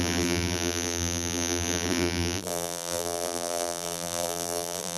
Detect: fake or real fake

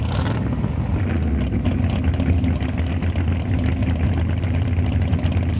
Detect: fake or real real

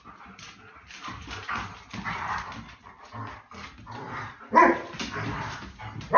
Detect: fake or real real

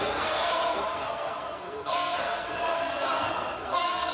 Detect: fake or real fake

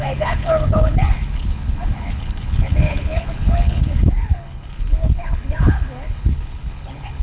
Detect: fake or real fake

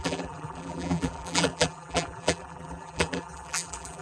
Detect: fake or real fake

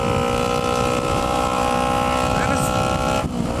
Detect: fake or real real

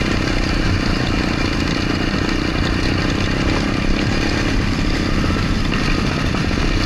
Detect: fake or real real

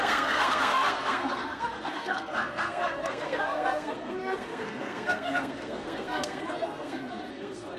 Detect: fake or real fake